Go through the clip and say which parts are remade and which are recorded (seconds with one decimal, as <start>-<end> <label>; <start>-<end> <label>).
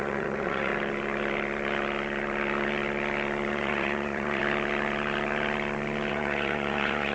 0.0-0.7 remade; 0.7-3.5 recorded; 3.5-4.4 remade; 4.4-6.1 recorded; 6.1-7.1 remade